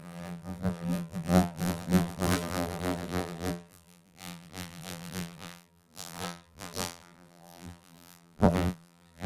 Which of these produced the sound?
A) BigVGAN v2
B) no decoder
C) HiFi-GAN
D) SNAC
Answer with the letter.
A